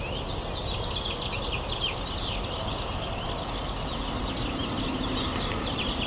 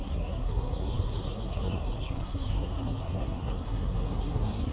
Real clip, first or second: first